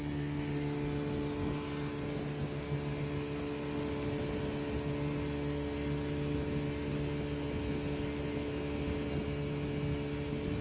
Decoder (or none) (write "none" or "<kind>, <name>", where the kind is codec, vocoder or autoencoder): none